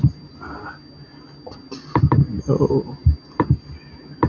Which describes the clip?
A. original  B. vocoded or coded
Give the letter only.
A